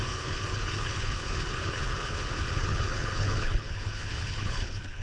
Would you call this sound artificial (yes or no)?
yes